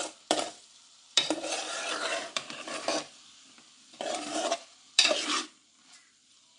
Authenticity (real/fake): fake